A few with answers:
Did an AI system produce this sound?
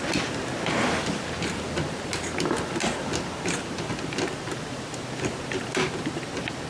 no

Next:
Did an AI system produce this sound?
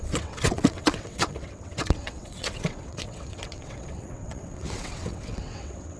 yes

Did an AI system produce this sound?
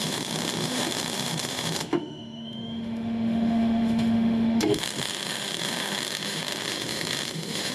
yes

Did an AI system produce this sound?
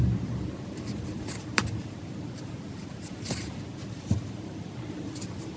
no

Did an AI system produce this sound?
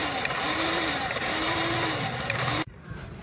yes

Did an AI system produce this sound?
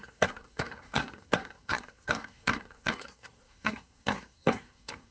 yes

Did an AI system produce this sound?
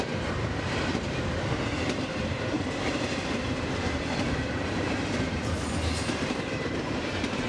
yes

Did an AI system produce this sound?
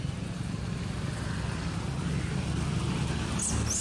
no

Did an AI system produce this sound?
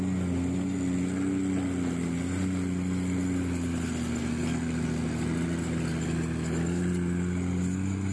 no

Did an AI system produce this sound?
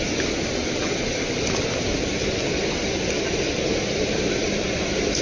no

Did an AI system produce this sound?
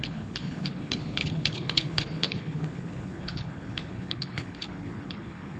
yes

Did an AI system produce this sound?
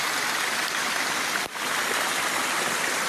no